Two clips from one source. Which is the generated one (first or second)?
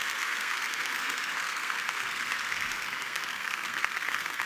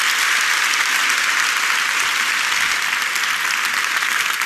first